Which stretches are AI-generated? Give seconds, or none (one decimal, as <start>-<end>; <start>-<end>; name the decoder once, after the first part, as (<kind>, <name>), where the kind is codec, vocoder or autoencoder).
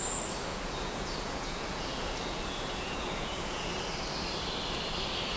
0.5-3.7 (vocoder, Vocos)